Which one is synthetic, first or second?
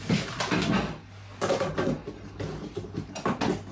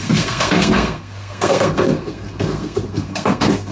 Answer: second